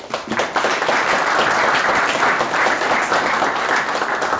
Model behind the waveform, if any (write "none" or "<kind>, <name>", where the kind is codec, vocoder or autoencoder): none